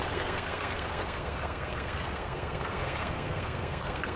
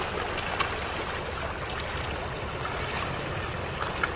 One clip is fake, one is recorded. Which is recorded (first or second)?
second